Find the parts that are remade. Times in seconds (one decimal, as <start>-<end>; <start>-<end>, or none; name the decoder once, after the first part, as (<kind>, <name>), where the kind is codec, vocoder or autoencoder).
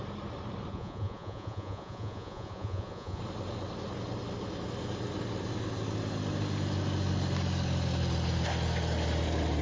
0.7-3.2 (vocoder, Vocos)